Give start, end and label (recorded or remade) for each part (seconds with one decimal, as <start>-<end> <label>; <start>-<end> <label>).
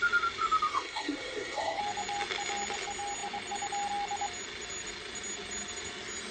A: 0.0-0.7 recorded; 0.7-1.8 remade; 1.8-6.3 recorded